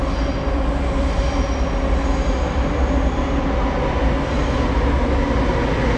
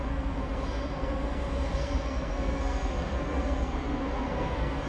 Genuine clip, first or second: first